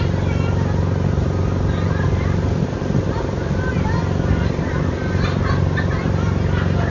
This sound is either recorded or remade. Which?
recorded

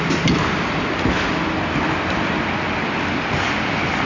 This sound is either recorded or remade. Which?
recorded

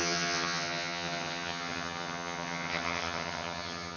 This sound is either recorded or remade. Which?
remade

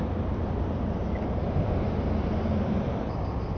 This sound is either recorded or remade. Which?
recorded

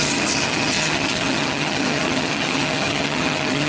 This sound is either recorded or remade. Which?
remade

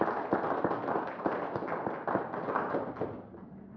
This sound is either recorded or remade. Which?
recorded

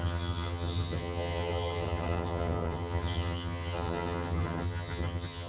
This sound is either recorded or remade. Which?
remade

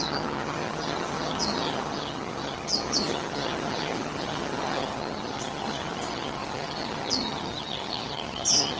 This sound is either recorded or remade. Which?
remade